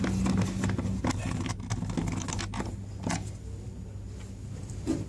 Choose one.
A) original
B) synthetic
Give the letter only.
A